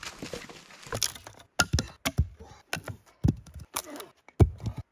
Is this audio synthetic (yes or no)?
no